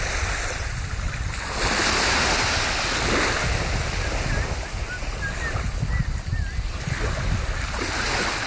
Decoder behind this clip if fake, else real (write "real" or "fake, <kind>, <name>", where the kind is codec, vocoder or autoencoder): real